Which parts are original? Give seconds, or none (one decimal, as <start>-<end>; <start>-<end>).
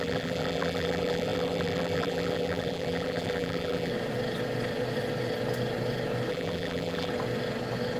3.9-6.3; 7.1-8.0